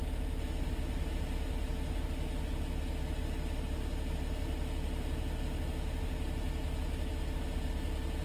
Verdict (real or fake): real